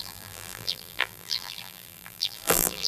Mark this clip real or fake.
fake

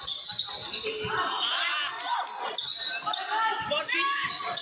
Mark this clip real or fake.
real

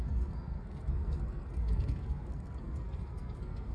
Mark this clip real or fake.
fake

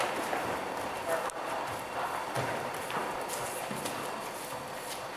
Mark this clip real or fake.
real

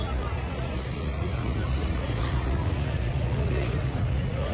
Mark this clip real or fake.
fake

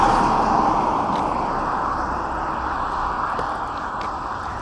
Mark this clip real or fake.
fake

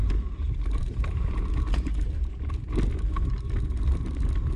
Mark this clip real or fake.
real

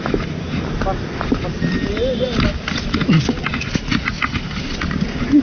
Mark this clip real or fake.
real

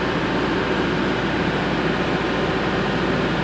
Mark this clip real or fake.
real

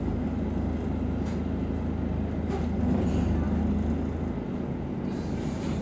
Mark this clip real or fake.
real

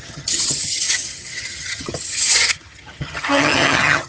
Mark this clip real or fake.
fake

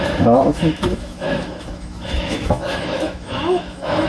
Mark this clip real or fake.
fake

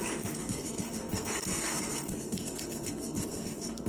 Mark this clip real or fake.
fake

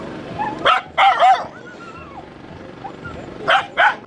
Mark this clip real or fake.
real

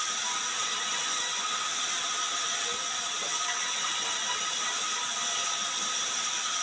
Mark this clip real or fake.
real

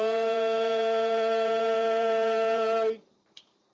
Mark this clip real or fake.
fake